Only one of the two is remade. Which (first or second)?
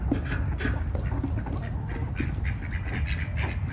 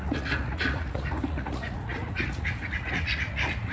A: second